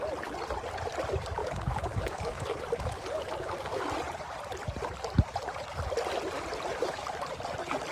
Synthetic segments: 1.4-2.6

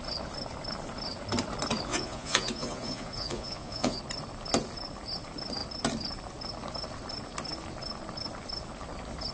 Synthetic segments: 1.9-4.0

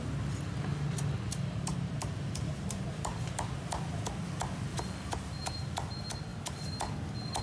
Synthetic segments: 1.7-3.4; 4.7-5.7

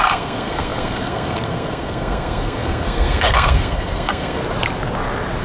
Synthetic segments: 0.0-4.4

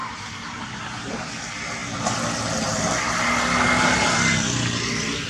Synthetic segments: 0.0-1.3

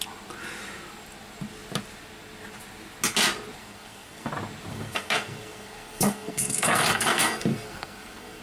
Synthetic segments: 3.6-4.3; 4.7-8.4